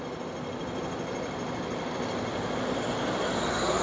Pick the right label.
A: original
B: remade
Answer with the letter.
A